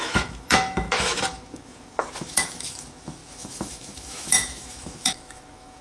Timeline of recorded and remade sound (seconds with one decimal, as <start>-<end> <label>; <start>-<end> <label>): 0.0-5.8 remade